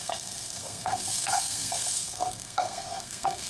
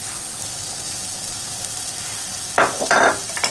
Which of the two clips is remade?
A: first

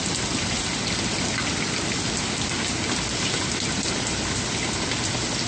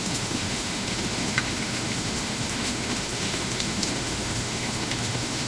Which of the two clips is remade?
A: second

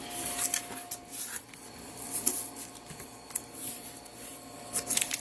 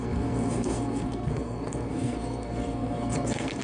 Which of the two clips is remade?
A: second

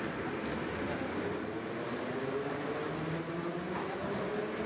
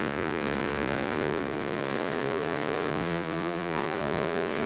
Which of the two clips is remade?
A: second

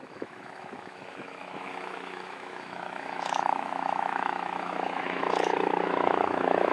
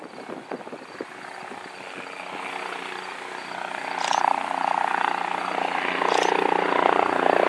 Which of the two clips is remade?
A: first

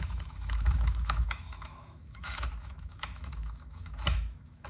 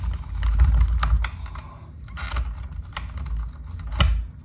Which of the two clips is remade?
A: first